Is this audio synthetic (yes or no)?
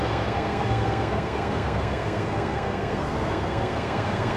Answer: yes